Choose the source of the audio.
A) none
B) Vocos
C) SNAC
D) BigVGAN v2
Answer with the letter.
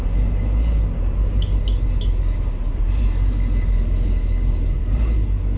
A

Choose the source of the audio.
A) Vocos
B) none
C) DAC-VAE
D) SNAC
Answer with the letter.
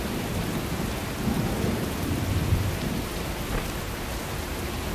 B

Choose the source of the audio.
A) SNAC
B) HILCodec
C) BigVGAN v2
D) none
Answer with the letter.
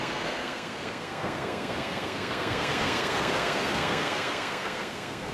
A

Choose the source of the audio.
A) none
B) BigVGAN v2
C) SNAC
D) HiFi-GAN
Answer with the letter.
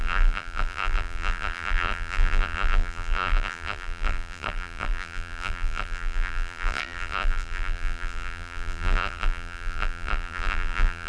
B